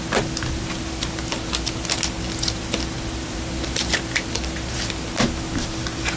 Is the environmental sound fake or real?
real